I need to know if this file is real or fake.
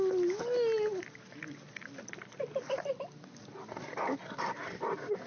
real